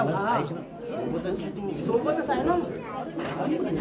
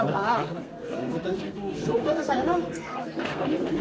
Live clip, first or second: first